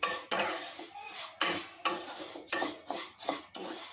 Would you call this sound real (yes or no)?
no